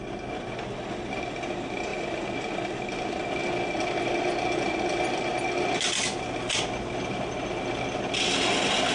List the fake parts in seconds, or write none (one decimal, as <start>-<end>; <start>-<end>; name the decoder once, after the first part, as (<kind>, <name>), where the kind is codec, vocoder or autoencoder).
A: none